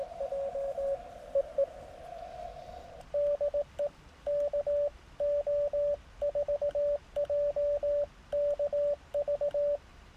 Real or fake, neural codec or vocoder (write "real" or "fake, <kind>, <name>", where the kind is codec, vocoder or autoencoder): real